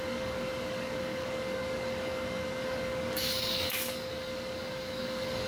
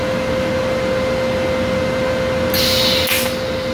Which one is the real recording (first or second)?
second